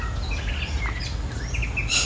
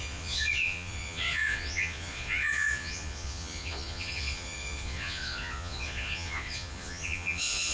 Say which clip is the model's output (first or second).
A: second